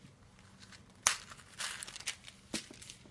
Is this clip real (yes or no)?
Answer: yes